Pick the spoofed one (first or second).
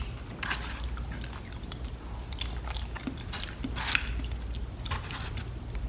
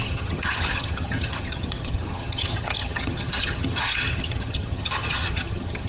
second